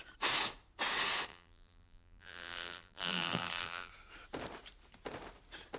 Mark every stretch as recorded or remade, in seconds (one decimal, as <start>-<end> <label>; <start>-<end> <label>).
0.0-1.3 recorded; 1.3-3.9 remade; 3.9-5.8 recorded